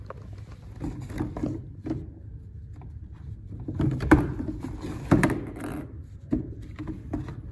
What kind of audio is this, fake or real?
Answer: real